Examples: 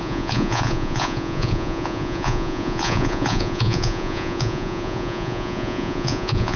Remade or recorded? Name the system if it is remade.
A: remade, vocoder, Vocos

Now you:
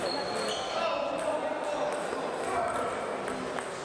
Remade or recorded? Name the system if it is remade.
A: recorded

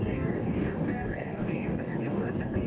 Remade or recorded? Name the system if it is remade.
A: remade, codec, DAC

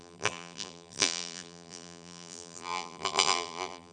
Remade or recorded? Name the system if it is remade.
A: remade, vocoder, BigVGAN v2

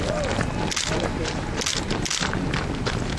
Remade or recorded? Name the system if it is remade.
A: recorded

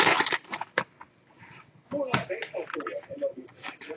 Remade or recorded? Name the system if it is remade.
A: recorded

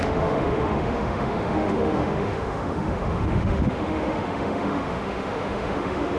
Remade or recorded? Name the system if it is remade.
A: remade, autoencoder, DAC-VAE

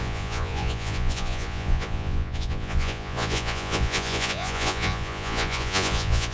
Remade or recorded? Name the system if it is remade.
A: remade, vocoder, Vocos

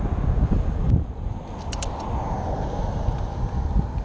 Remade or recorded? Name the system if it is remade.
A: recorded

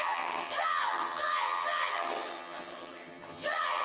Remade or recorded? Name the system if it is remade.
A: remade, vocoder, HiFi-GAN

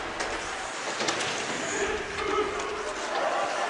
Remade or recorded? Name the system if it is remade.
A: recorded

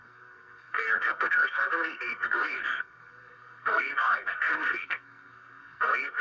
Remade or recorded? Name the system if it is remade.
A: remade, codec, SNAC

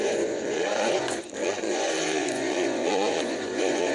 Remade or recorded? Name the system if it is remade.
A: remade, vocoder, Vocos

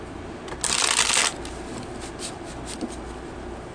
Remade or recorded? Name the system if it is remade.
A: recorded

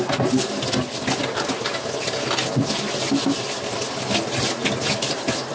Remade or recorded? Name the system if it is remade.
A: recorded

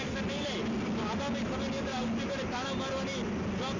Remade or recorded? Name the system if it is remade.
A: recorded